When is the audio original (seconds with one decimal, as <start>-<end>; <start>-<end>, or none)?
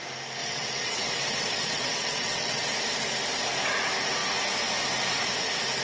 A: 0.0-0.4; 2.7-5.8